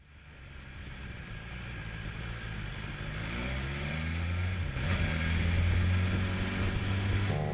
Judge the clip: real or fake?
real